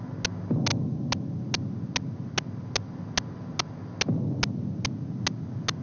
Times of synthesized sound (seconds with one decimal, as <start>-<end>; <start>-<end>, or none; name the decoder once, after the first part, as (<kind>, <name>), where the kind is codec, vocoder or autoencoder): none